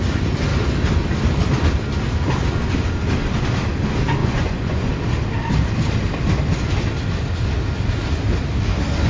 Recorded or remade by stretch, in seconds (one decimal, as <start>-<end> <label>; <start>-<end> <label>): 0.0-4.2 recorded; 4.2-4.9 remade; 4.9-9.1 recorded